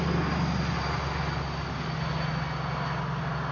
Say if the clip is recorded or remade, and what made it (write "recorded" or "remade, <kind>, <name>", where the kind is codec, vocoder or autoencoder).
recorded